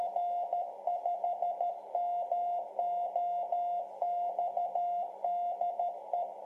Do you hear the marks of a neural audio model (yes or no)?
no